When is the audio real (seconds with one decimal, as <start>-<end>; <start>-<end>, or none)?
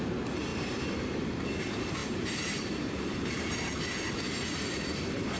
0.0-0.5; 1.2-2.0